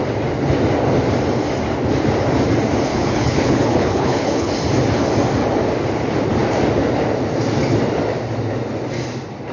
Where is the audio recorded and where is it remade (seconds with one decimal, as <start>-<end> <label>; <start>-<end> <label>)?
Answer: 0.0-2.9 recorded; 2.9-4.5 remade; 4.5-9.5 recorded